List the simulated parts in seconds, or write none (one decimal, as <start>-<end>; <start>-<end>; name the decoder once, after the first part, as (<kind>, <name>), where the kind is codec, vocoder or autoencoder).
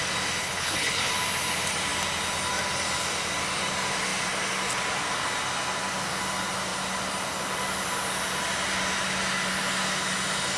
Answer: 0.4-1.1 (codec, HILCodec)